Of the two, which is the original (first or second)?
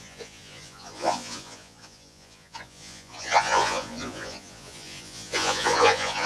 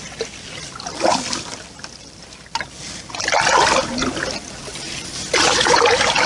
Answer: second